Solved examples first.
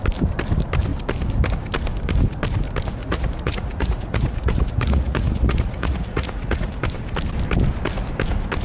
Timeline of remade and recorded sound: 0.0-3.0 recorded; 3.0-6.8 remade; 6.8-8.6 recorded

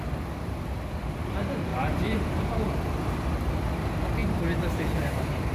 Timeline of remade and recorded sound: 0.0-1.7 recorded; 1.7-2.5 remade; 2.5-4.2 recorded; 4.2-5.5 remade

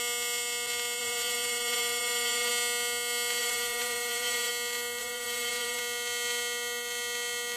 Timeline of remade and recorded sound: 0.0-1.0 recorded; 1.0-2.5 remade; 2.5-3.4 recorded; 3.4-4.5 remade; 4.5-5.0 recorded; 5.0-5.8 remade; 5.8-7.6 recorded